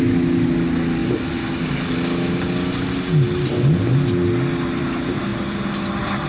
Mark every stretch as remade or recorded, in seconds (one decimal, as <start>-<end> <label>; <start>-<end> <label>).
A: 0.0-6.3 recorded